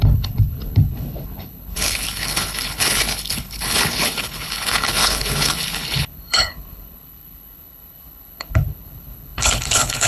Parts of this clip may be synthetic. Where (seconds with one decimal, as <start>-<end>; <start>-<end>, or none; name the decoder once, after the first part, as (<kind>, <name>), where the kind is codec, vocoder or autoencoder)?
0.0-10.1 (codec, HILCodec)